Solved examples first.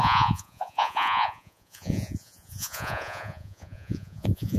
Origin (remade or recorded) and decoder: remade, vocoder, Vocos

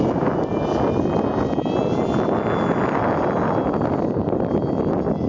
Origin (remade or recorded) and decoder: recorded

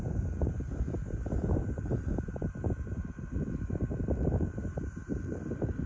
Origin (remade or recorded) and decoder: remade, vocoder, BigVGAN v2